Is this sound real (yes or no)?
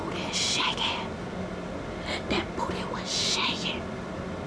yes